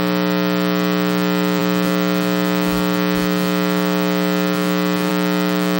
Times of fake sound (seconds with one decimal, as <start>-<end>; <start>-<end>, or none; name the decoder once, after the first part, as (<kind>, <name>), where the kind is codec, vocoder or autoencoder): none